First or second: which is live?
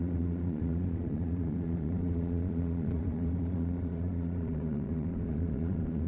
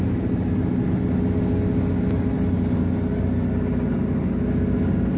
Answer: second